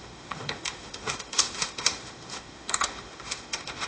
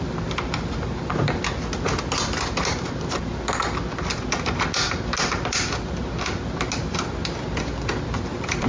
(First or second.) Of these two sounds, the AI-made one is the first